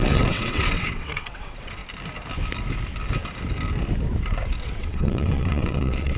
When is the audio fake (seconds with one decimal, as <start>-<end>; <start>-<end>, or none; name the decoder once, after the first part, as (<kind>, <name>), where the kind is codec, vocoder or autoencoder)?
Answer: 0.0-1.8 (vocoder, WaveNeXt); 4.6-6.2